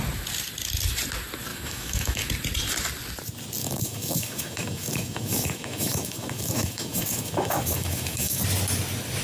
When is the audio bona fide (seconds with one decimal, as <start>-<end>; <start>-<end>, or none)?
0.0-1.5; 2.3-3.6; 8.4-9.2